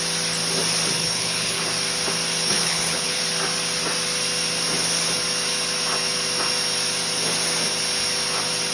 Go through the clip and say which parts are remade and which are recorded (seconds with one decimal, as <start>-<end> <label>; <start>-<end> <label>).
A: 0.0-1.0 recorded; 1.0-1.6 remade; 1.6-2.5 recorded; 2.5-3.2 remade; 3.2-8.7 recorded